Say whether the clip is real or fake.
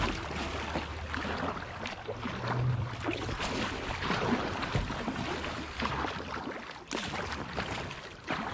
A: real